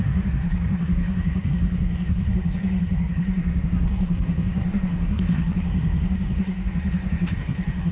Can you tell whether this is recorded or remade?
remade